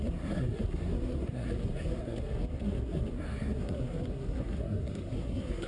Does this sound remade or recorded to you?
remade